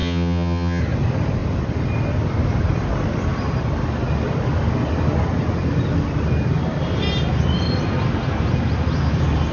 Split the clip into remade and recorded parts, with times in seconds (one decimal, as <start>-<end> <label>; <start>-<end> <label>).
0.0-0.8 remade; 0.8-9.5 recorded